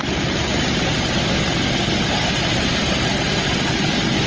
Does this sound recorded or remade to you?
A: recorded